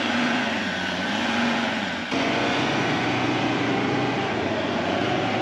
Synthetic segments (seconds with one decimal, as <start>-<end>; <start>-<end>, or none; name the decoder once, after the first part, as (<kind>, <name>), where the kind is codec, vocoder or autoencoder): 0.0-5.4 (vocoder, Vocos)